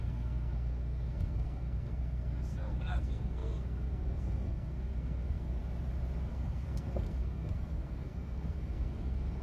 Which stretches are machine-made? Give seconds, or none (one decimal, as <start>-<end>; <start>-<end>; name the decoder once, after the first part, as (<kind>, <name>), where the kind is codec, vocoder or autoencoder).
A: 0.0-5.6 (codec, SNAC); 6.3-9.4

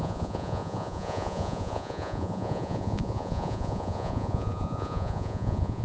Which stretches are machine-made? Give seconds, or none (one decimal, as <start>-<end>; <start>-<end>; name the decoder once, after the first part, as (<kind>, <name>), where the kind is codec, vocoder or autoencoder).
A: 0.0-5.8 (vocoder, Vocos)

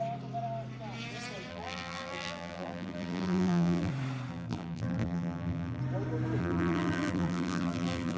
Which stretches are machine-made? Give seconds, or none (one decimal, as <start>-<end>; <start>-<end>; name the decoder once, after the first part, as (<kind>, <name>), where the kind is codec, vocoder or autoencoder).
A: 1.5-3.9 (vocoder, BigVGAN v2); 4.3-5.8; 6.4-8.2

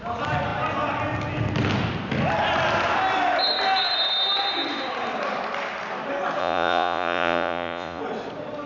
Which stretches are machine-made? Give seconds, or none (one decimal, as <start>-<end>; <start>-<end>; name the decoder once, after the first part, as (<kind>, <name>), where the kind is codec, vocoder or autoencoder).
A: 6.4-8.0 (vocoder, Vocos)

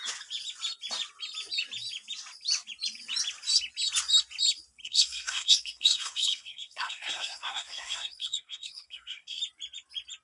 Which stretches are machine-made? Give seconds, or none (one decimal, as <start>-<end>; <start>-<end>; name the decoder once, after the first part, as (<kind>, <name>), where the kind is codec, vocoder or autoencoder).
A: 4.8-9.4 (codec, SNAC)

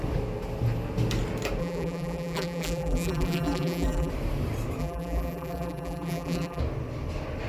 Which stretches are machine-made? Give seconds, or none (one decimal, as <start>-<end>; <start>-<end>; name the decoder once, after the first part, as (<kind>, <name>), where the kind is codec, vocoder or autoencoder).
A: 1.6-4.1 (vocoder, BigVGAN v2); 4.8-6.6

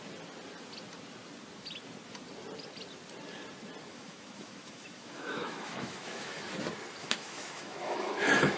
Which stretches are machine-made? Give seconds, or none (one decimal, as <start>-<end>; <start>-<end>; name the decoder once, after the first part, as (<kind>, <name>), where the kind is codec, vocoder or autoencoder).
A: 3.9-6.4 (autoencoder, DAC-VAE); 7.0-8.6

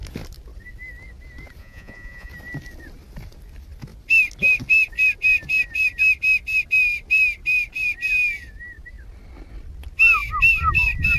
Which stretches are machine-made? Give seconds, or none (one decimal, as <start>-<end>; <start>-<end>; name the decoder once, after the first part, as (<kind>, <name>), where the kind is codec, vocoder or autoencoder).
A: 1.6-2.3 (vocoder, Vocos)